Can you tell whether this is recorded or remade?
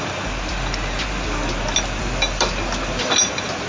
recorded